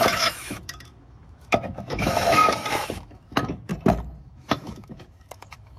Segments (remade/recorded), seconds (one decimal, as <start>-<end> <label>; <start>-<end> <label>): 0.0-3.7 remade; 3.7-4.2 recorded; 4.2-5.8 remade